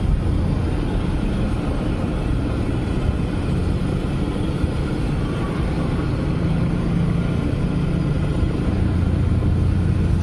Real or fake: real